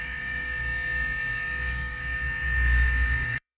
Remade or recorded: remade